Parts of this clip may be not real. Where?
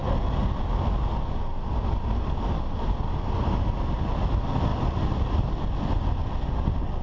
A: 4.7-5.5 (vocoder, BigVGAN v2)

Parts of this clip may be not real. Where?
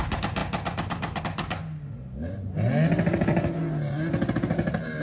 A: none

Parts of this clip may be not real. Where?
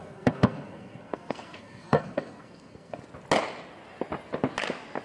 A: 0.0-3.0 (codec, SNAC)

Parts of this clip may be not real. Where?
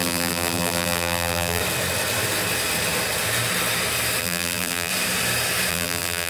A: 0.0-1.6 (vocoder, BigVGAN v2); 4.2-4.9; 5.7-6.3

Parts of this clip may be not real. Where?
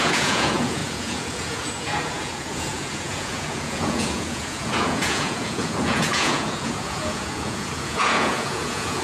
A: 0.0-9.0 (vocoder, Vocos)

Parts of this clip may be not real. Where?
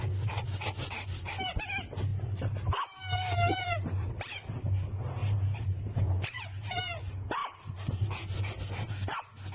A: 2.1-4.1 (vocoder, BigVGAN v2); 5.2-7.0; 7.4-8.7